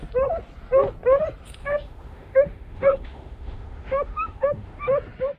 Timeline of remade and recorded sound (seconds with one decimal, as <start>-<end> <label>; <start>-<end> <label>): 0.0-1.6 recorded; 1.6-4.8 remade; 4.8-5.4 recorded